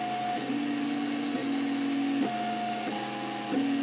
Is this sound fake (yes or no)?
no